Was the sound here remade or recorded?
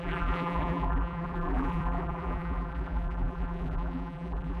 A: remade